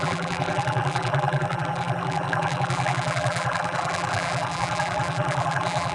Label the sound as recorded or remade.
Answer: remade